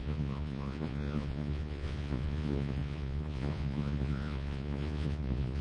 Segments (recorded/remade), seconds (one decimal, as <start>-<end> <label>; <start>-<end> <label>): 0.0-5.6 remade